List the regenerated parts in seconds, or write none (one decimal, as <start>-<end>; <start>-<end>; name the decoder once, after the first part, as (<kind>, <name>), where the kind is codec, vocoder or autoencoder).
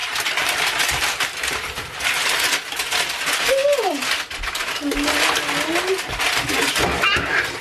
0.0-2.2 (vocoder, BigVGAN v2)